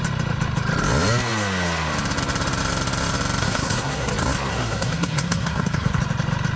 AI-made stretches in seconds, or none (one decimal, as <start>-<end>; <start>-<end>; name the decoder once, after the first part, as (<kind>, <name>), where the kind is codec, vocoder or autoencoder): 3.4-4.1 (codec, SNAC); 4.5-6.0